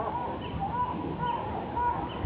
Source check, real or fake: real